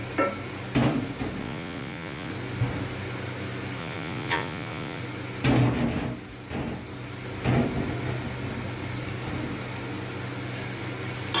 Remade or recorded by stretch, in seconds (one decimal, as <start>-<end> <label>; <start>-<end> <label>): 0.0-1.4 recorded; 1.4-2.3 remade; 2.3-3.8 recorded; 3.8-5.0 remade; 5.0-11.4 recorded